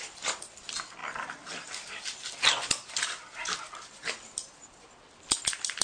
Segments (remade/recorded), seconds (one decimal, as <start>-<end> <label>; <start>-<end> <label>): 0.0-1.0 recorded; 1.0-4.1 remade; 4.1-5.8 recorded